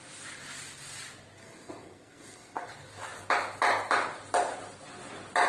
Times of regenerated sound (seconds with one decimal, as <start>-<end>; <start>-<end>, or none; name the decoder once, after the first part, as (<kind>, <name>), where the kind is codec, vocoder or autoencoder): 1.4-2.7 (codec, SNAC)